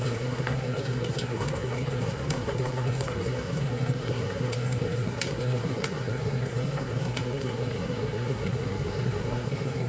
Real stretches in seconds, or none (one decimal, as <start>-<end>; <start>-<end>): none